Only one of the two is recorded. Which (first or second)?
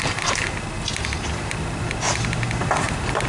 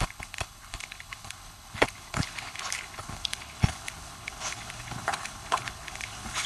first